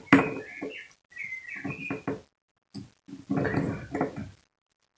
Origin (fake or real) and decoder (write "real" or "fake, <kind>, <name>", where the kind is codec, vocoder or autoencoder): real